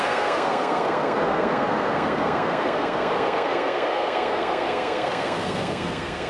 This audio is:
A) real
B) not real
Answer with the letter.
B